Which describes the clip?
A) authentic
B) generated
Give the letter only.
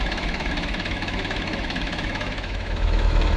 B